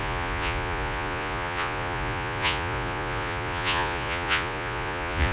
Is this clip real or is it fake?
fake